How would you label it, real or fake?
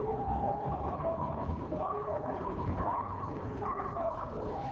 fake